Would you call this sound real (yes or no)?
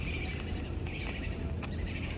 yes